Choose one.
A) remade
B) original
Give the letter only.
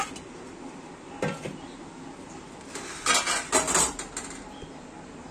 B